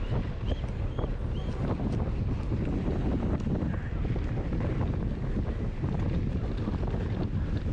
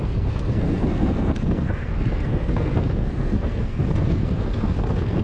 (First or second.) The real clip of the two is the first